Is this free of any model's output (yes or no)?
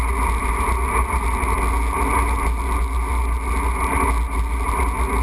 yes